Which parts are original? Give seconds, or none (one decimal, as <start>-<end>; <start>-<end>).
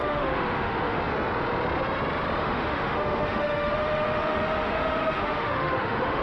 1.0-2.4